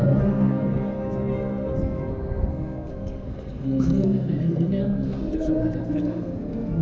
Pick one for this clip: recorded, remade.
remade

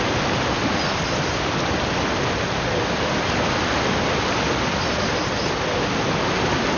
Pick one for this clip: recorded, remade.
recorded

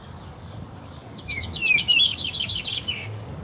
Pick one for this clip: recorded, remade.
remade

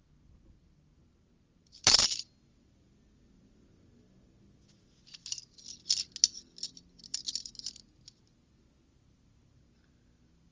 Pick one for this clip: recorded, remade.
recorded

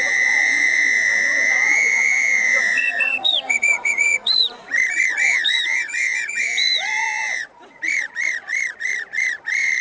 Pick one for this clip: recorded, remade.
remade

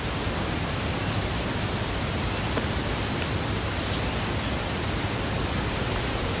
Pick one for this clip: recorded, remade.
recorded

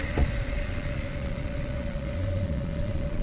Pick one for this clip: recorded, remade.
remade